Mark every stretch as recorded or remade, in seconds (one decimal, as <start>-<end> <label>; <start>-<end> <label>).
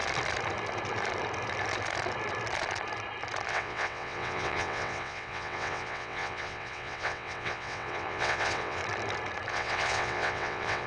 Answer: 0.0-3.5 recorded; 3.5-8.8 remade; 8.8-9.5 recorded; 9.5-10.9 remade